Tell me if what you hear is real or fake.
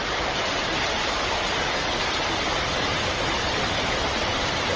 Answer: real